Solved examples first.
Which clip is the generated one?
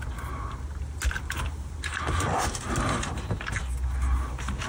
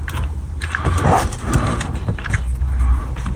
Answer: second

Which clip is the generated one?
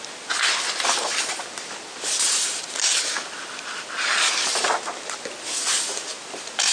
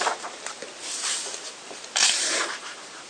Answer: second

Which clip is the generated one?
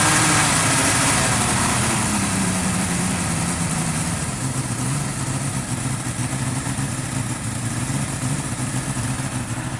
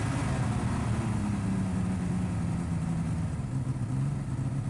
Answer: first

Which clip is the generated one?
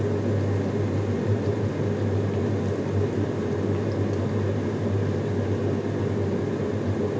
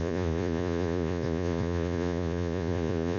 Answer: second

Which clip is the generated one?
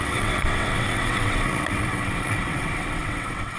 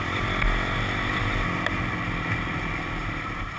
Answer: first